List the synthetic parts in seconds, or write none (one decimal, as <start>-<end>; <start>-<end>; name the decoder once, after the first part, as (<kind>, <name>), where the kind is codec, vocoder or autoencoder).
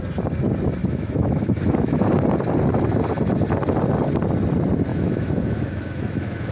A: 0.8-2.0 (autoencoder, DAC-VAE); 4.9-6.5